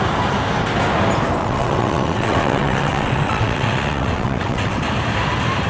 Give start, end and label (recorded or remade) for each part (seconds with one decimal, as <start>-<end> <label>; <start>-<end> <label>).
0.0-1.4 recorded; 1.4-4.8 remade; 4.8-5.7 recorded